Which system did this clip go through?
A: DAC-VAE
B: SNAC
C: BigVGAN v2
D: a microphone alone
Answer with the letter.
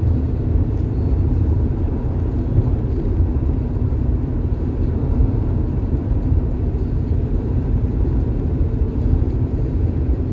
C